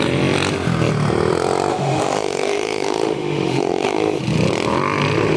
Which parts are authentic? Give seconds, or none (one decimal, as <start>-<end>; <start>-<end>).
0.0-1.7; 4.2-5.4